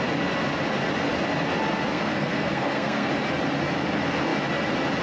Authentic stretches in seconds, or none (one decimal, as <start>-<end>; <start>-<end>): 0.0-1.9; 3.1-5.0